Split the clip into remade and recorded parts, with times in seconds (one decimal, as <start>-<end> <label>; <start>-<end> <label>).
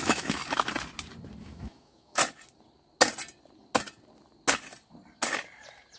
0.0-0.4 remade; 0.4-1.4 recorded; 1.4-2.2 remade; 2.2-6.0 recorded